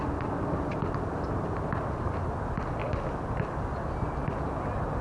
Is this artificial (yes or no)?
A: no